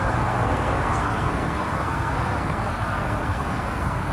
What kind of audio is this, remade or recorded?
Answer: remade